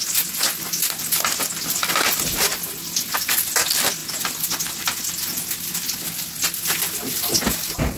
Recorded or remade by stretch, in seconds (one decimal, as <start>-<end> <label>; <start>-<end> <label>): 0.0-8.0 recorded